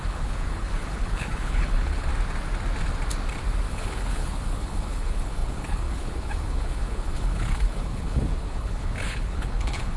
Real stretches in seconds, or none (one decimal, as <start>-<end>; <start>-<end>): 2.1-3.7